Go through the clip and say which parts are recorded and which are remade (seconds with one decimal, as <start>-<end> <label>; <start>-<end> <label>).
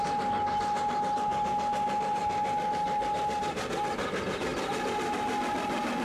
0.0-6.0 recorded